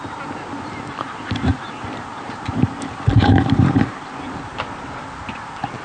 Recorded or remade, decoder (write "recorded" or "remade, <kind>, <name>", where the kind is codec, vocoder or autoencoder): recorded